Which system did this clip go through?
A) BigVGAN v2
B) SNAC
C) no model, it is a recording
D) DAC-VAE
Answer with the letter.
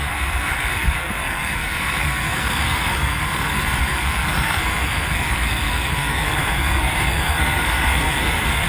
B